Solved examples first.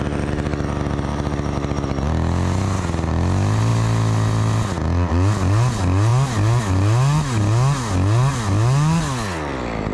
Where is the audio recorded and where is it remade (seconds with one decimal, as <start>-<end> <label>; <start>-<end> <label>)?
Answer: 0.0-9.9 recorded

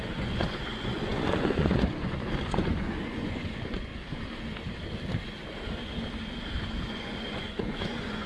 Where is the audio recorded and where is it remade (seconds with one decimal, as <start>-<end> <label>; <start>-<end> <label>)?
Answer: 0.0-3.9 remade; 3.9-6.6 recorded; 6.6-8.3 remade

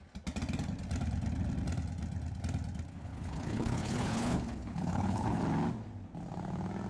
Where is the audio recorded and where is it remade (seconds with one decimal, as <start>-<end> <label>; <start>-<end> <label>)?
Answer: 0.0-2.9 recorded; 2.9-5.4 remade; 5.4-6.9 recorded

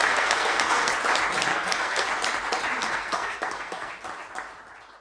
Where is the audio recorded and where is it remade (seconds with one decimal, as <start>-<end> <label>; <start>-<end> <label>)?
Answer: 0.0-0.9 remade; 0.9-1.5 recorded; 1.5-2.1 remade; 2.1-2.8 recorded; 2.8-3.9 remade; 3.9-5.0 recorded

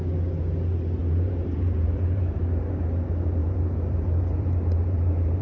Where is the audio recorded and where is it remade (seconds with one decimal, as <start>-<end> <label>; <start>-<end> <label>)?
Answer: 0.0-1.0 recorded; 1.0-2.4 remade; 2.4-3.4 recorded; 3.4-5.4 remade